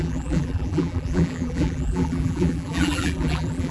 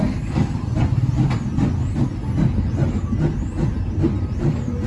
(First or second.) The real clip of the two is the second